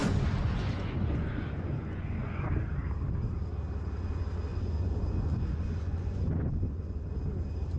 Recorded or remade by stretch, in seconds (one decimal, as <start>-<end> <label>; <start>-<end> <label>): 0.0-2.5 remade; 2.5-4.5 recorded; 4.5-7.1 remade; 7.1-7.8 recorded